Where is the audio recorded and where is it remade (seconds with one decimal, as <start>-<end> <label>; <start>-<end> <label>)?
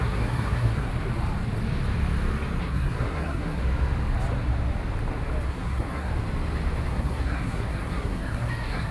0.0-0.9 remade; 0.9-2.6 recorded; 2.6-3.6 remade; 3.6-5.5 recorded; 5.5-6.1 remade; 6.1-6.9 recorded; 6.9-8.9 remade